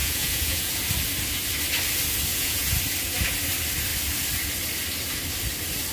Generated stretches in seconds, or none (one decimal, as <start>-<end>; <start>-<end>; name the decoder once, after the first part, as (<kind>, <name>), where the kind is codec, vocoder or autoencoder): 0.0-0.7 (vocoder, Vocos); 2.3-2.8